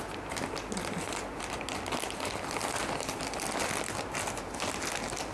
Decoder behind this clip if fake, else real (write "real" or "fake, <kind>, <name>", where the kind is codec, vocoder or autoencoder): real